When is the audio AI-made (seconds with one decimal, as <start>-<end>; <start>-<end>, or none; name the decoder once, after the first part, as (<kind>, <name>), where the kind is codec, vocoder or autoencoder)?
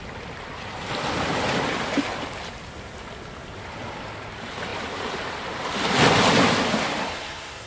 7.0-7.7 (codec, SNAC)